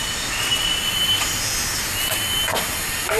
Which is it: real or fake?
real